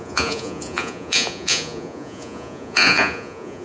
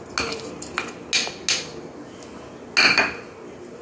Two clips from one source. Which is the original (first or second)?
second